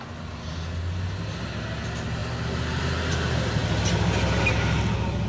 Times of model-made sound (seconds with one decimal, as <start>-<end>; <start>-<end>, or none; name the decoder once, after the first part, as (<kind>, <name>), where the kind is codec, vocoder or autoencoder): none